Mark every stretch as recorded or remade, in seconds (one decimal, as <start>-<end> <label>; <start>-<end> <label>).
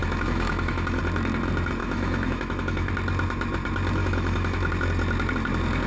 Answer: 0.0-1.0 remade; 1.0-1.8 recorded; 1.8-2.9 remade; 2.9-4.0 recorded; 4.0-4.7 remade; 4.7-5.9 recorded